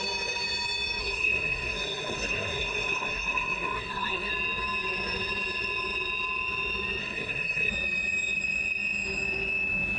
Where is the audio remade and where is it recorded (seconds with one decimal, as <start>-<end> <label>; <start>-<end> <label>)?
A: 0.0-1.0 recorded; 1.0-4.3 remade; 4.3-7.0 recorded; 7.0-7.7 remade; 7.7-10.0 recorded